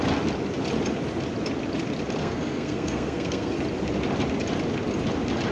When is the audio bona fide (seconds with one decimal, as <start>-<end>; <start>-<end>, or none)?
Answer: 0.0-2.2; 3.6-5.5